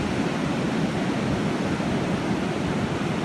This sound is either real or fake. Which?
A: real